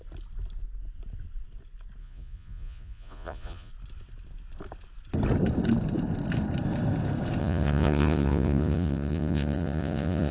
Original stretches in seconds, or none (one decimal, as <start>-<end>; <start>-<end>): 0.0-2.0; 3.7-7.4